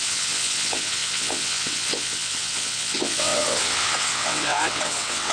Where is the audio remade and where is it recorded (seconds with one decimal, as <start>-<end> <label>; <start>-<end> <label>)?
0.0-5.3 remade

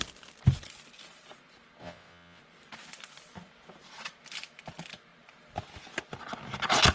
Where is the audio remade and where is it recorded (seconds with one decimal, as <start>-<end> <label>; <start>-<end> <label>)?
0.0-1.8 recorded; 1.8-2.4 remade; 2.4-6.9 recorded

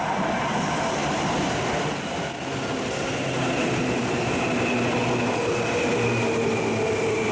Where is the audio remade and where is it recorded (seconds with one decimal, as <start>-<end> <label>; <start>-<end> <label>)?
0.0-7.3 recorded

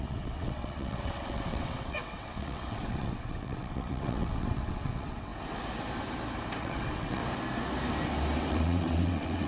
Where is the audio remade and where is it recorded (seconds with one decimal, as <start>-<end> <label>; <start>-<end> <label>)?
0.0-5.3 remade; 5.3-6.6 recorded; 6.6-7.2 remade; 7.2-8.5 recorded; 8.5-9.5 remade

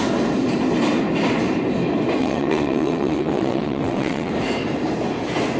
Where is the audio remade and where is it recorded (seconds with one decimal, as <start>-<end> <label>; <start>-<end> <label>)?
0.0-2.2 recorded; 2.2-4.3 remade; 4.3-5.6 recorded

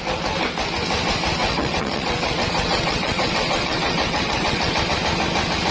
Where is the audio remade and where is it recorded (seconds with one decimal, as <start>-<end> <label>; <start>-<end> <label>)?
0.0-1.4 recorded; 1.4-4.8 remade; 4.8-5.7 recorded

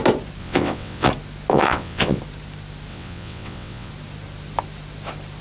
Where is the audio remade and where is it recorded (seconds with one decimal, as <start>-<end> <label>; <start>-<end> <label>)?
0.0-0.4 recorded; 0.4-1.1 remade; 1.1-1.5 recorded; 1.5-2.2 remade; 2.2-2.9 recorded; 2.9-3.9 remade; 3.9-5.4 recorded